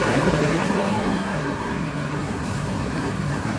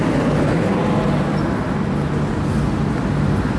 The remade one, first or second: first